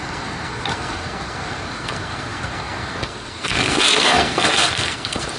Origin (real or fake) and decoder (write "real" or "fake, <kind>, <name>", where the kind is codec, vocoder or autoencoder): fake, codec, SNAC